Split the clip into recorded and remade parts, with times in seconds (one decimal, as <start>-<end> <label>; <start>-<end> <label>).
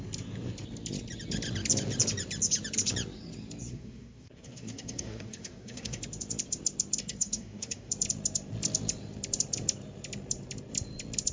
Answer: 0.0-3.7 recorded; 3.7-6.0 remade; 6.0-7.0 recorded; 7.0-7.9 remade; 7.9-11.3 recorded